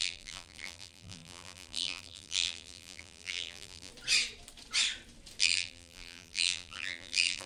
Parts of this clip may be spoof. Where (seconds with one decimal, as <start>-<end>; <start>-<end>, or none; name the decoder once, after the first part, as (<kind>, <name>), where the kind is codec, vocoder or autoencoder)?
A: 0.0-3.9 (vocoder, BigVGAN v2); 5.4-7.5